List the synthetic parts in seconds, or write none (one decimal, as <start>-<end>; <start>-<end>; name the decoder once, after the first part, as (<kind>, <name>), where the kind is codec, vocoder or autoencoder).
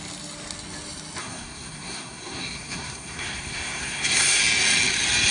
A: 1.2-4.4 (codec, SNAC)